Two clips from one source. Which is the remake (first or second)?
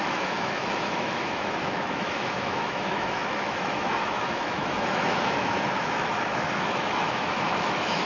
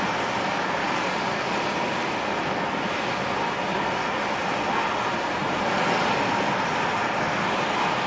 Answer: first